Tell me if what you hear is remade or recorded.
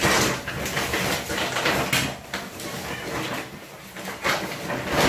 recorded